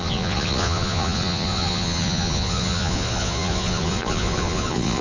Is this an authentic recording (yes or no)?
no